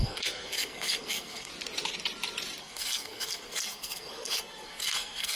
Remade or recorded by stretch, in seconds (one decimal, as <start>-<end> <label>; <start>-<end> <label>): 0.0-1.5 remade; 1.5-2.6 recorded; 2.6-5.4 remade